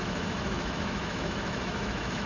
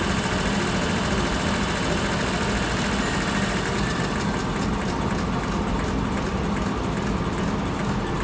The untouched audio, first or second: second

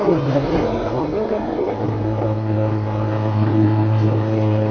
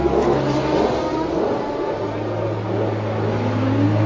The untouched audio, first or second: second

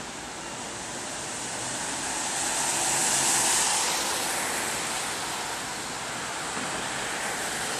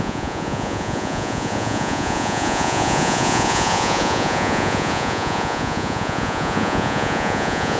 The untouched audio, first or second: first